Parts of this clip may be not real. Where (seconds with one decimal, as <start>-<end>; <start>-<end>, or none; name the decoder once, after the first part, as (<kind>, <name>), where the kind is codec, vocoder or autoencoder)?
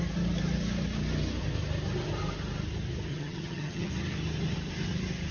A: 3.1-3.9 (vocoder, HiFi-GAN)